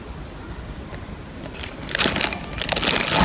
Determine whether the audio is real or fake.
real